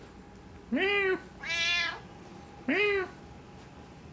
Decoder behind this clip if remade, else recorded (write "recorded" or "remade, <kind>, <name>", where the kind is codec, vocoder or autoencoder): recorded